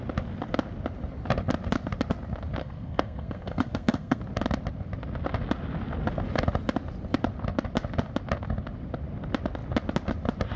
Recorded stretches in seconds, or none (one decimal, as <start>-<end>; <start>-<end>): 0.0-2.6; 4.2-10.6

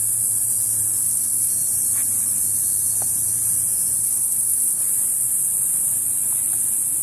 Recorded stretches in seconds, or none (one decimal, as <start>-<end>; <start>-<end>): 0.0-1.0; 1.5-4.0; 4.8-7.0

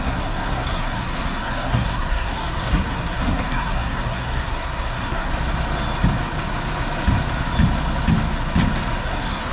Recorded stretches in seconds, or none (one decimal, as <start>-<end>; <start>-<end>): 5.3-9.0

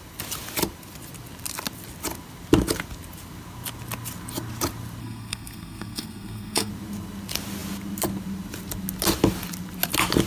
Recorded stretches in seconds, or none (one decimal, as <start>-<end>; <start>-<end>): 0.0-5.0; 6.7-10.3